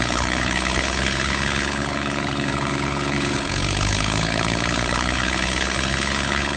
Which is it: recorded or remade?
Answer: remade